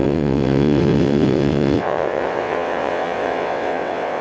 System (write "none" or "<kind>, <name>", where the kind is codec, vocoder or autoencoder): vocoder, WaveNeXt